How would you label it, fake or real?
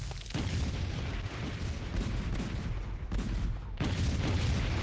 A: real